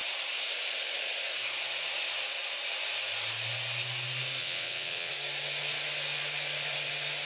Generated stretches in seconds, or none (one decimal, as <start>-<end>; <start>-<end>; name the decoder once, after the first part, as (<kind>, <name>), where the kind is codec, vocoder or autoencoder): 4.4-5.1 (vocoder, WaveNeXt)